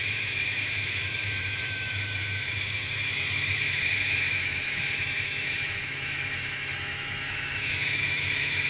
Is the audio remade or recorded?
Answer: remade